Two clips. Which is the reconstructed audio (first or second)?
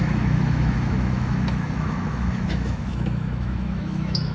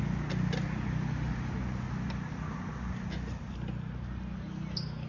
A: first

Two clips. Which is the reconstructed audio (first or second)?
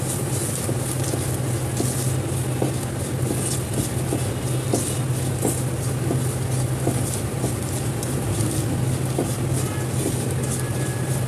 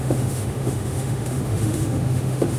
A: second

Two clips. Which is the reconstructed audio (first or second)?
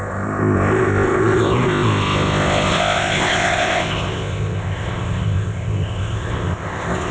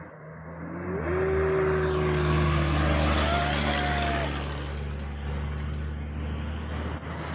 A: first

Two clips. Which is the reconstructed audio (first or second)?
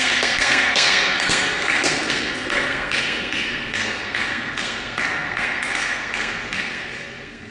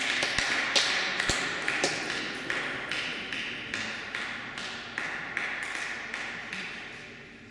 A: first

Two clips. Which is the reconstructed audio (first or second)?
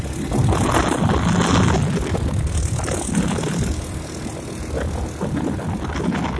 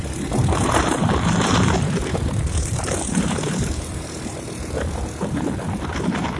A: second